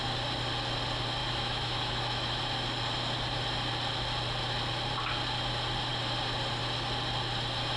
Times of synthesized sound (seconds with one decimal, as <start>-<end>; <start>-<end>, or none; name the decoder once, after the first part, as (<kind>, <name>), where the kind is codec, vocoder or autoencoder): 1.2-2.4 (autoencoder, DAC-VAE)